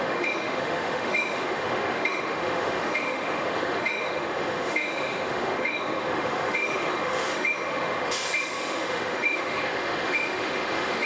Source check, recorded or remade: remade